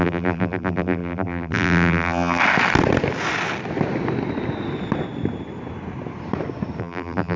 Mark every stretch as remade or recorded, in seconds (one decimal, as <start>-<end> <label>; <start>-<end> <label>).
0.0-2.4 remade; 2.4-6.8 recorded; 6.8-7.4 remade